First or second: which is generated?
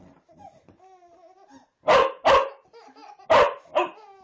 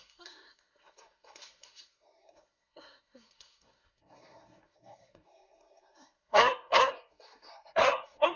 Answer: second